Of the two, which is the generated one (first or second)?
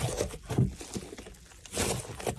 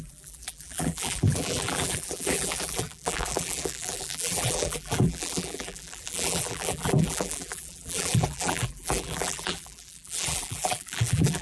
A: second